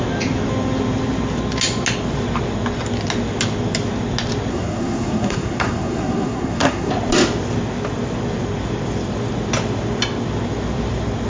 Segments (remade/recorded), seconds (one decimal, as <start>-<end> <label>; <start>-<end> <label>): 0.0-4.5 recorded; 4.5-6.9 remade; 6.9-11.3 recorded